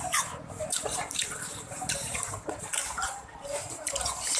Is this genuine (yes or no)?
no